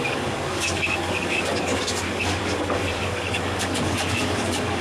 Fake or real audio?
fake